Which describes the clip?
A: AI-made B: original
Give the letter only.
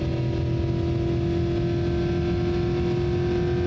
B